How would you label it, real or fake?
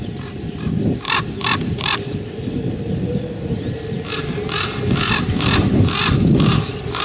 real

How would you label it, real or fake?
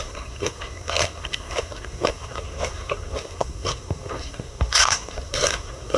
fake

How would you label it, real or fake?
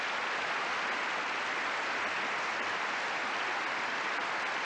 real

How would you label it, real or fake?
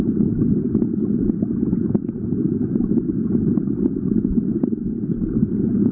real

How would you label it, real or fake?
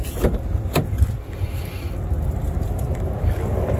real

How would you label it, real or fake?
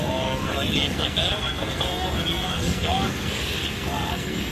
fake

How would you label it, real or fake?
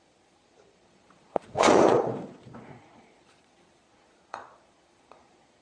fake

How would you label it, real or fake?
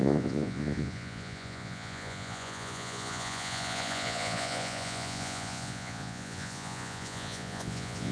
fake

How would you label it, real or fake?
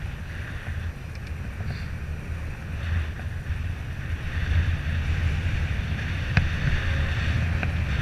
real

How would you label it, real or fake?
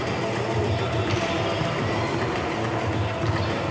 real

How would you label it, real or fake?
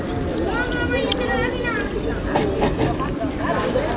real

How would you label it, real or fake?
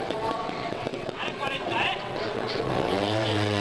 fake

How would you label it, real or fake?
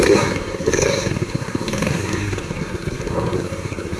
fake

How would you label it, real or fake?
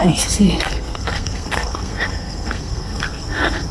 fake